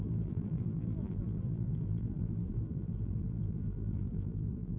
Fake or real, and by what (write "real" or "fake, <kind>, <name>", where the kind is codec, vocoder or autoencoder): fake, vocoder, BigVGAN v2